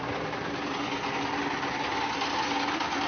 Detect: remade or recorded recorded